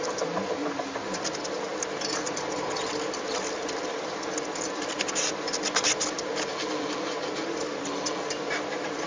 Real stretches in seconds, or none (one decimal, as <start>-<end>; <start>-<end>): 0.0-9.1